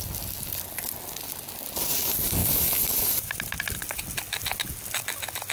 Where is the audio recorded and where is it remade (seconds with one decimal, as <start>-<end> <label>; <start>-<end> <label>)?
0.0-2.4 recorded; 2.4-3.5 remade; 3.5-5.5 recorded